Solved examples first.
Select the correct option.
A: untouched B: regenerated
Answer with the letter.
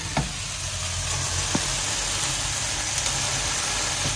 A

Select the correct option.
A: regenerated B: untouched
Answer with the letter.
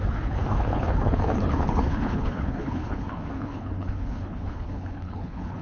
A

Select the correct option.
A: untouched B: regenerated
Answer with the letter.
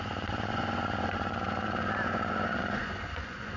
B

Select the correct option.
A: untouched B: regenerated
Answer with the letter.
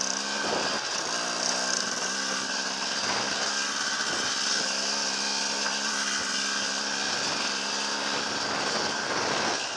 A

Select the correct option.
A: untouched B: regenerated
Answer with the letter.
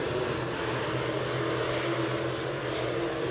A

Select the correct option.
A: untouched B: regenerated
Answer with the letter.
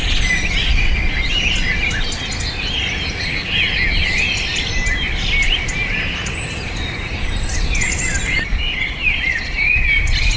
A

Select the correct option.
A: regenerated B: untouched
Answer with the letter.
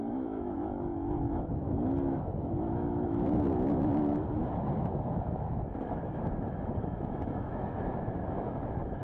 A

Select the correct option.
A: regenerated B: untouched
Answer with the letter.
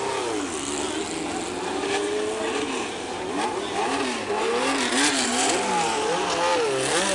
B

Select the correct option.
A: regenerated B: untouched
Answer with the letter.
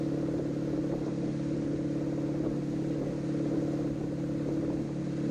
B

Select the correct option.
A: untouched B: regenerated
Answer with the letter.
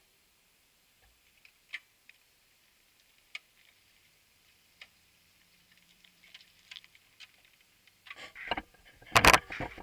B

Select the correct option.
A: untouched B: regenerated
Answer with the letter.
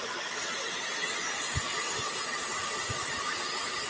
B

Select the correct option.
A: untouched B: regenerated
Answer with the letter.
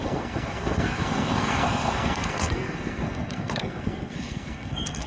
B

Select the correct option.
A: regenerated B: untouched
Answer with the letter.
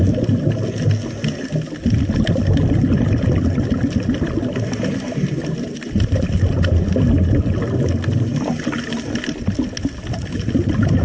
B